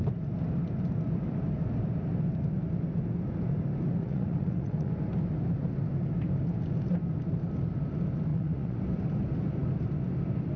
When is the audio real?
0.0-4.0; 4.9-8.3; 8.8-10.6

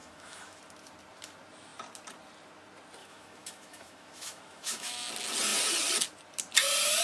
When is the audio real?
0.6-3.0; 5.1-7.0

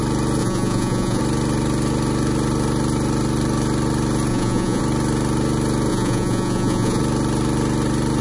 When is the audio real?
0.0-0.4; 1.2-4.3; 4.8-5.9; 7.0-8.2